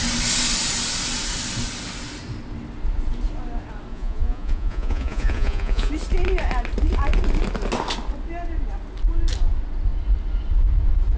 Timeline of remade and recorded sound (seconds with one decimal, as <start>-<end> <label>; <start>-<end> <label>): 0.0-3.9 recorded; 3.9-5.9 remade; 5.9-11.2 recorded